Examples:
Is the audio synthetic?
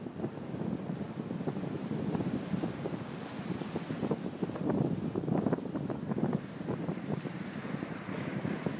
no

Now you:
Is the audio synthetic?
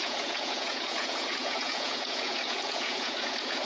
yes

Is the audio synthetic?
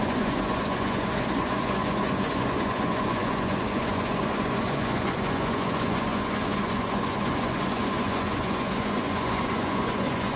yes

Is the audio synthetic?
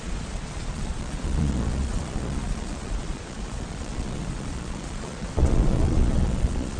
yes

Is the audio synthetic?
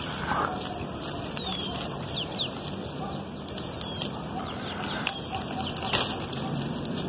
no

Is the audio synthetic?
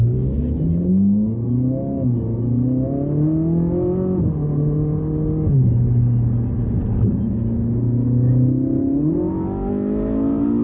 no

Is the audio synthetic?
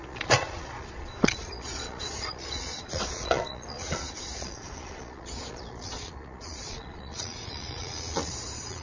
yes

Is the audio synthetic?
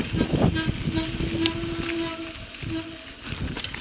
no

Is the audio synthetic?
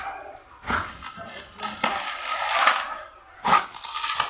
no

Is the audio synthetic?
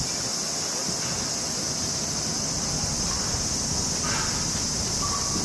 no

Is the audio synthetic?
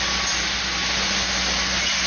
no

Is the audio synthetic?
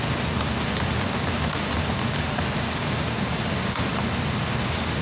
no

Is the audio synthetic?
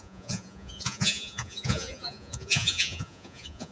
yes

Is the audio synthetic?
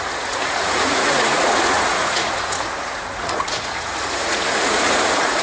yes